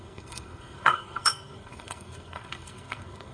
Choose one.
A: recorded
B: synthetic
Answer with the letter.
B